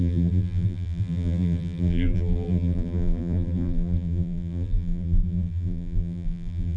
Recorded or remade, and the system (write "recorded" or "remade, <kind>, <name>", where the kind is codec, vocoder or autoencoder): remade, vocoder, BigVGAN v2